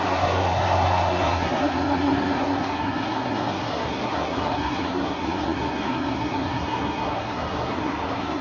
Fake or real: fake